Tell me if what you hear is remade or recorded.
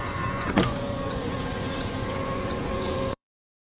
remade